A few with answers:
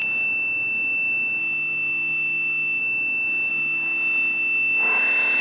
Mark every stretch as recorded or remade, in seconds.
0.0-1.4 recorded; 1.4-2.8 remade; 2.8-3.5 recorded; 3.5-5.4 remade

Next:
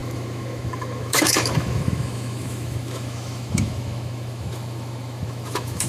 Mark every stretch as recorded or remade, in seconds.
0.0-5.9 remade

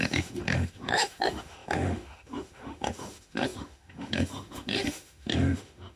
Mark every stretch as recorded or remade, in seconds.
0.0-6.0 remade

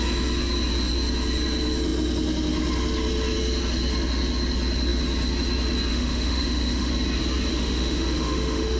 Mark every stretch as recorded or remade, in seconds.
0.0-5.9 recorded; 5.9-6.9 remade; 6.9-7.5 recorded; 7.5-8.8 remade

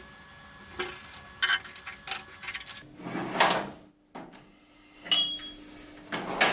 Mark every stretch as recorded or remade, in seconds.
0.0-6.5 recorded

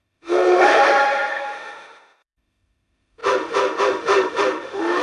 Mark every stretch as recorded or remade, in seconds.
0.0-5.0 remade

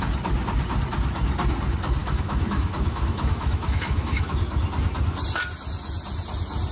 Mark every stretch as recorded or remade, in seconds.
0.0-2.0 recorded; 2.0-4.3 remade; 4.3-6.7 recorded